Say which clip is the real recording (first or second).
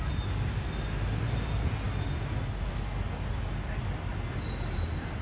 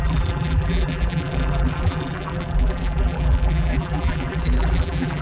first